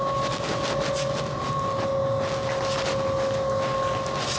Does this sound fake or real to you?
real